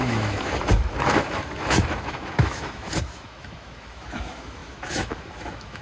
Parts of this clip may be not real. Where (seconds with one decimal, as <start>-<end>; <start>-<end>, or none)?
0.0-5.8